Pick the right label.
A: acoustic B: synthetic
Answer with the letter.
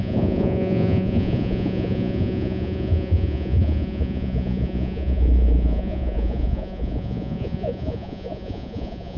B